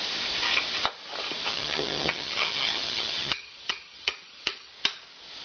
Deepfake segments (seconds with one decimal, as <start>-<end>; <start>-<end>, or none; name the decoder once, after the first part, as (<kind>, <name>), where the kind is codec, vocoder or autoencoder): 1.5-4.7 (vocoder, HiFi-GAN)